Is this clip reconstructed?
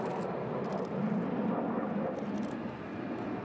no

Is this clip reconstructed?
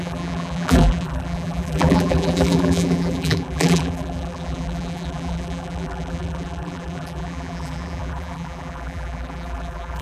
yes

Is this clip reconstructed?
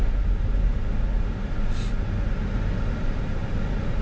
no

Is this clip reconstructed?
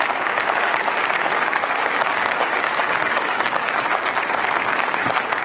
yes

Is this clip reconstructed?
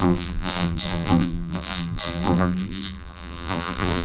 yes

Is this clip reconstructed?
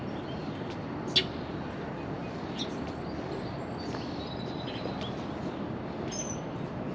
no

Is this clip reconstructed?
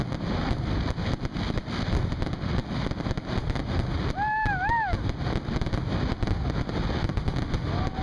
no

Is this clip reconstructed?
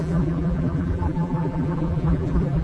yes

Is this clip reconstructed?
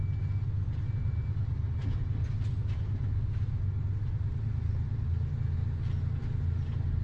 no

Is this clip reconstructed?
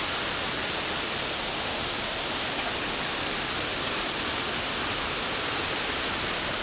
yes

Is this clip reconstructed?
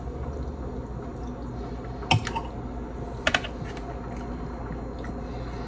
no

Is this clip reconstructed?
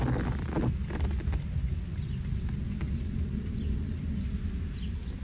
no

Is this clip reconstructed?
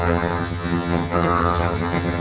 yes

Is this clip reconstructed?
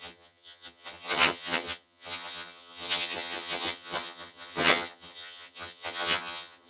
yes